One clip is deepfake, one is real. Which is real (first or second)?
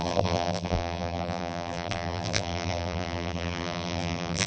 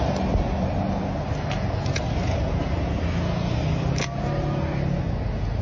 second